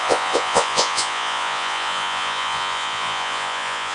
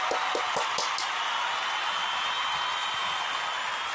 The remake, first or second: first